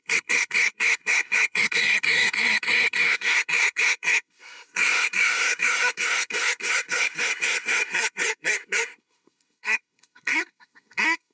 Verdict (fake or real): fake